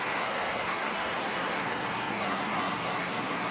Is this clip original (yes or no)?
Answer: no